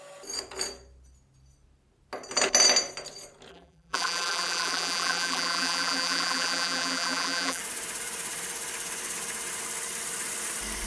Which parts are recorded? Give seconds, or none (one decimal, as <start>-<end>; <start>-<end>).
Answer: 0.0-3.5; 7.6-10.9

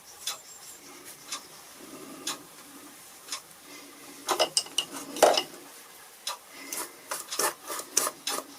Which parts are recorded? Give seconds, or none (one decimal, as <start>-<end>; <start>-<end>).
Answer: 4.2-6.0

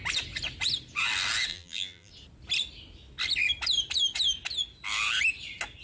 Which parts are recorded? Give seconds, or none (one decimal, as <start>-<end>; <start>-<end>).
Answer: 0.0-1.5; 2.1-5.8

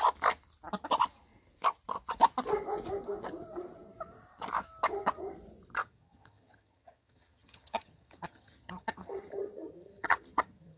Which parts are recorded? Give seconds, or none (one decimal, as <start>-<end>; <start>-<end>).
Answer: 0.0-5.8